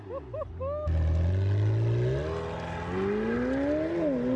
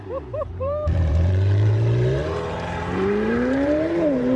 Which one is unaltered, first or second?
first